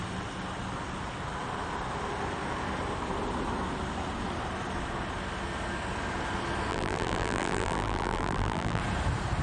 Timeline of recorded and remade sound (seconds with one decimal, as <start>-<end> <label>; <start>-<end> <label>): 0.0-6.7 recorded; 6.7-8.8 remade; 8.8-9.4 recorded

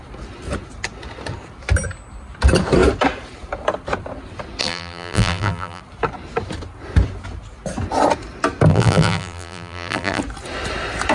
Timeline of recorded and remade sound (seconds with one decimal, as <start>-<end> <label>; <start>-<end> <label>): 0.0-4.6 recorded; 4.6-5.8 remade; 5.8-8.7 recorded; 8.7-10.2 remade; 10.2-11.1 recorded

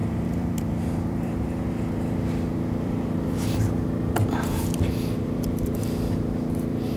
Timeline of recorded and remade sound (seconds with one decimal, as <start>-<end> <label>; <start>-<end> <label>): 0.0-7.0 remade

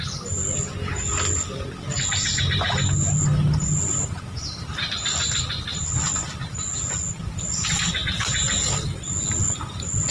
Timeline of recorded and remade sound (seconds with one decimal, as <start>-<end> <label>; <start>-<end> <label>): 0.0-10.1 recorded